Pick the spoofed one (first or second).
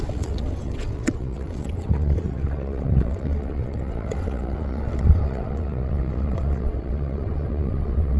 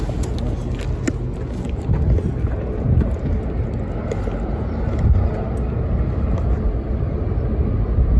first